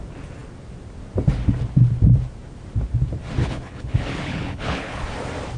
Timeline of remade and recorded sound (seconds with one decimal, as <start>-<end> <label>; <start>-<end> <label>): 0.0-3.4 recorded; 3.4-5.0 remade; 5.0-5.6 recorded